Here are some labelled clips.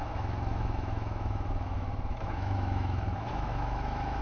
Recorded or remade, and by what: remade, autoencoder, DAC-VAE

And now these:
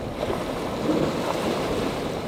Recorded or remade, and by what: recorded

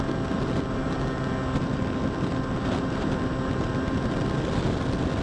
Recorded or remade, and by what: recorded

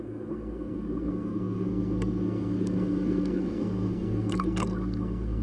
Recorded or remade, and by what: remade, codec, SNAC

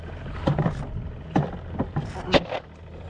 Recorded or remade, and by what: recorded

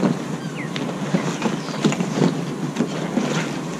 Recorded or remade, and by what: recorded